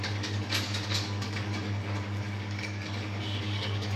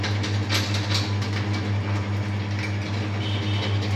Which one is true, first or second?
second